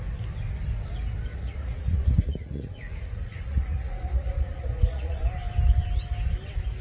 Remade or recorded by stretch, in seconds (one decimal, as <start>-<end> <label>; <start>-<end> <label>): 0.0-1.3 recorded; 1.3-5.2 remade; 5.2-6.8 recorded